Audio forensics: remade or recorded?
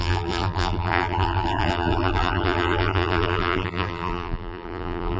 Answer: remade